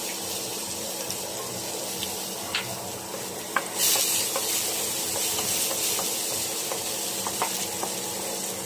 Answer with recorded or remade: recorded